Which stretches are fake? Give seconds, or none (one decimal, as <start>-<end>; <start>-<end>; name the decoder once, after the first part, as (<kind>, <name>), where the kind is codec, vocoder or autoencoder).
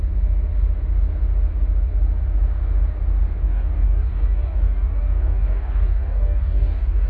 3.4-7.1 (codec, DAC)